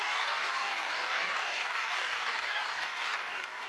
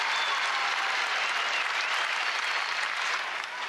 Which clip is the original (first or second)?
second